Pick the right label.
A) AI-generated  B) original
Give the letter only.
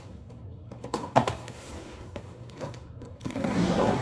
A